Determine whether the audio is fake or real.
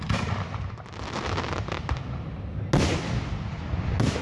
real